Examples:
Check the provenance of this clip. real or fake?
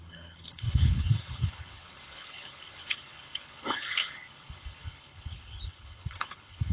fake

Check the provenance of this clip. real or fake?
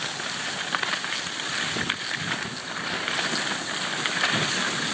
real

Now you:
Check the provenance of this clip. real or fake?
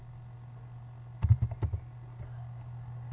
real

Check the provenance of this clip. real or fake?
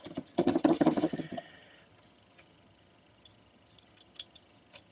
fake